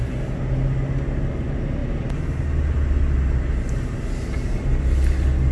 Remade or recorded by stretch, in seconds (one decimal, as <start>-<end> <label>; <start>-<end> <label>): 0.0-5.5 recorded